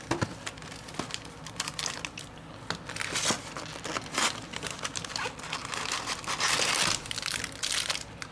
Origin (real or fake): real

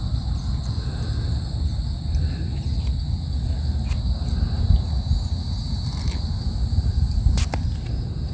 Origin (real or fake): real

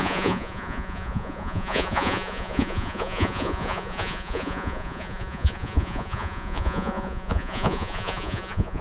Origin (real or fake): fake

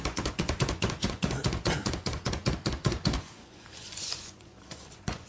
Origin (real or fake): fake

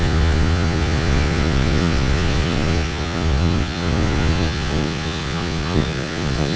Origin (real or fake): fake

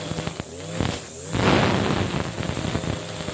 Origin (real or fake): real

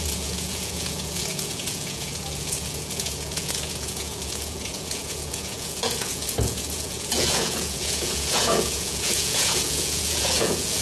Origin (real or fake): fake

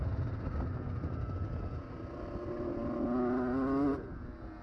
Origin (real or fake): real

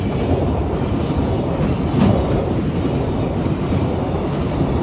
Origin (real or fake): real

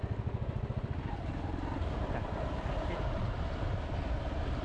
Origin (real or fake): real